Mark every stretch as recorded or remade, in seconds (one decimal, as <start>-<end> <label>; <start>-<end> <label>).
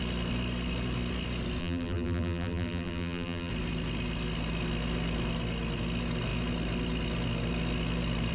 0.0-1.6 recorded; 1.6-3.5 remade; 3.5-8.3 recorded